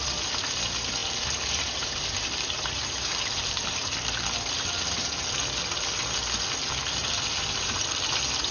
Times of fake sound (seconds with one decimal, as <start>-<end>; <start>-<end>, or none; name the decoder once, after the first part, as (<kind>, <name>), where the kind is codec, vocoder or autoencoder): 1.0-3.8 (vocoder, BigVGAN v2); 7.0-7.8